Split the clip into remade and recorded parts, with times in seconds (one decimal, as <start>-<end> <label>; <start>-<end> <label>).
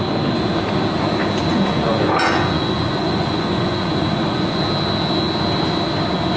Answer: 0.0-1.5 recorded; 1.5-4.6 remade; 4.6-6.4 recorded